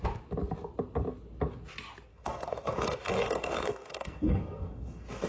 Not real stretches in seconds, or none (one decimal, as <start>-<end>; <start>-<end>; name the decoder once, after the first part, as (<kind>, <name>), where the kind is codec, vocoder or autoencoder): 2.1-5.3 (codec, SNAC)